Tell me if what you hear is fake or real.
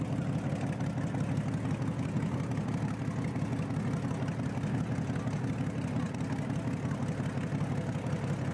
real